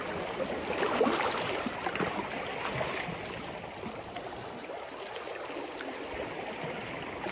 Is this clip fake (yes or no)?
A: no